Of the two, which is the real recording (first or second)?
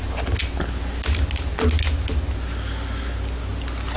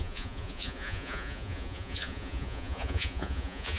first